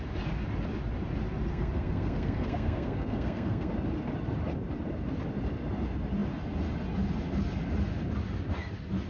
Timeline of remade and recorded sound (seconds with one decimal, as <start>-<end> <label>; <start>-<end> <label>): 0.0-1.5 recorded; 1.5-3.7 remade; 3.7-9.1 recorded